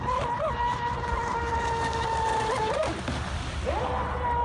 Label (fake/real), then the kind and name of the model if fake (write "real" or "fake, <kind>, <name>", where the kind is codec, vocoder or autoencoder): real